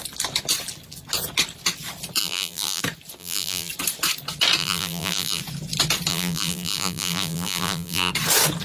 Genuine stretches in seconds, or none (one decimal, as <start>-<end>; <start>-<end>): 0.0-2.2; 2.8-3.2; 3.7-4.6; 5.4-6.1; 8.1-8.6